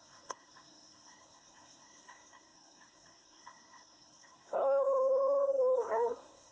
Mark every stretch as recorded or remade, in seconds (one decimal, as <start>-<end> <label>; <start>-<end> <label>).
0.0-6.5 remade